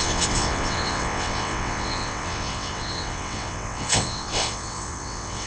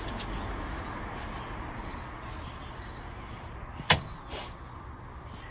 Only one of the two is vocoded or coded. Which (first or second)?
first